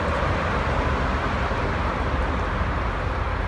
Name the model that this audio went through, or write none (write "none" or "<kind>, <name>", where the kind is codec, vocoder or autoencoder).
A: none